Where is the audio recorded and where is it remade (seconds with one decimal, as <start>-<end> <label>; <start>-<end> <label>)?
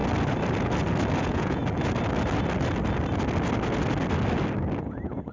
0.0-1.2 recorded; 1.2-1.6 remade; 1.6-4.8 recorded; 4.8-5.3 remade